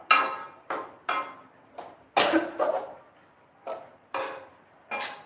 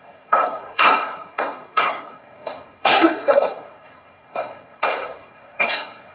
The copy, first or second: second